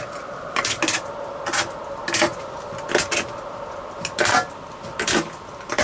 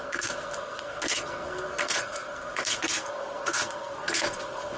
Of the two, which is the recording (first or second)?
first